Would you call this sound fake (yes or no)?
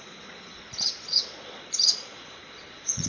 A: yes